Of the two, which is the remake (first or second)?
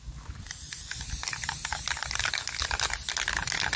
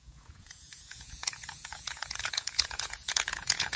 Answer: second